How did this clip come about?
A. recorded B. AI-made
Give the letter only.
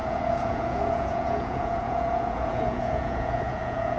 B